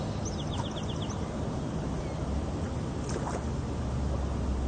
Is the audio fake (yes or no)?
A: no